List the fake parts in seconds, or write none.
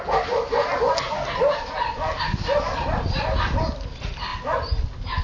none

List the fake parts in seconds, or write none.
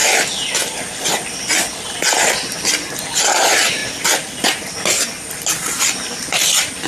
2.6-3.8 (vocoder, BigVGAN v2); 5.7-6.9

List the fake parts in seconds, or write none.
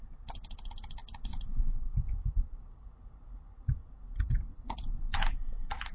0.0-3.7 (vocoder, BigVGAN v2); 4.3-5.9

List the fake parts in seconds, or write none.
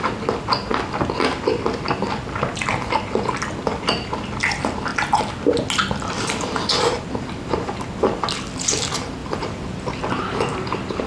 9.2-10.1 (vocoder, BigVGAN v2)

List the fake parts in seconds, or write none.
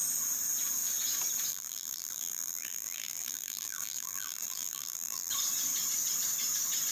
1.5-5.3 (vocoder, BigVGAN v2)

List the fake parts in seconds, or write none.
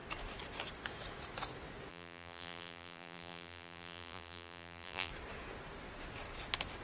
1.9-5.1 (vocoder, BigVGAN v2)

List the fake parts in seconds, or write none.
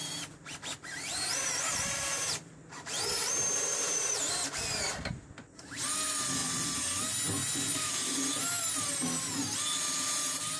0.0-4.6 (vocoder, BigVGAN v2); 6.4-7.0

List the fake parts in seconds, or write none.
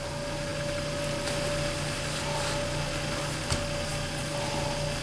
none